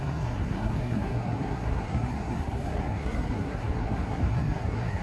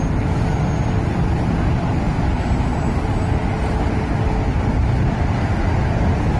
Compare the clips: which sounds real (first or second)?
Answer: second